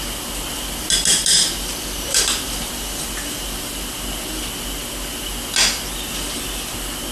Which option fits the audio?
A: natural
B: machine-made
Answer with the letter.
A